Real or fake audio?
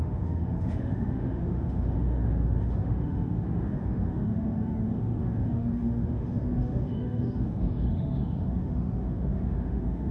fake